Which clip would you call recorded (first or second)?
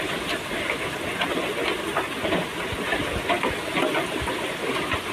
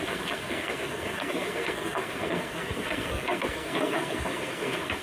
first